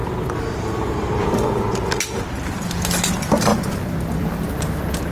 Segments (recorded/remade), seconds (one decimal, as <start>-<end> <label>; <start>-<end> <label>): 0.0-5.1 recorded